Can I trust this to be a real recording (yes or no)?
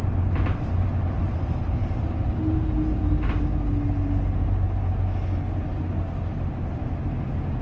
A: yes